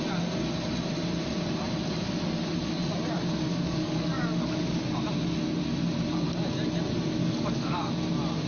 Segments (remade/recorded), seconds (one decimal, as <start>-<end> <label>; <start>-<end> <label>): 0.0-3.5 recorded; 3.5-4.8 remade; 4.8-7.2 recorded; 7.2-7.9 remade; 7.9-8.5 recorded